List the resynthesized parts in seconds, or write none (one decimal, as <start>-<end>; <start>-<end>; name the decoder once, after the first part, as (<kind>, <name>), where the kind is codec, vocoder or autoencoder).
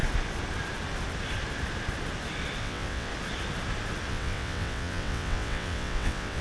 2.6-3.1 (vocoder, WaveNeXt); 4.1-6.4